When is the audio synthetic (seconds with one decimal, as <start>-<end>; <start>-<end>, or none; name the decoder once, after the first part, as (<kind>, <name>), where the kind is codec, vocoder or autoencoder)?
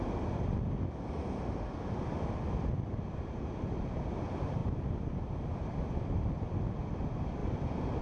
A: none